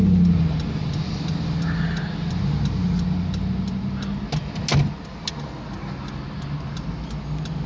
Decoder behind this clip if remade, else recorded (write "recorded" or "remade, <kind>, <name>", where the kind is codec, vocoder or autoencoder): recorded